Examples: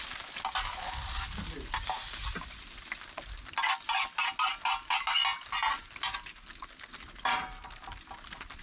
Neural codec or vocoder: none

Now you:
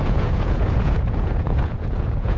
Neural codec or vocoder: vocoder, Vocos